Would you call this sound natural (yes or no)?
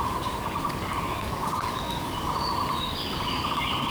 no